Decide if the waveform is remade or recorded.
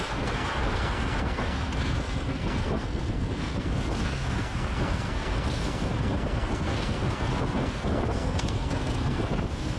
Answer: remade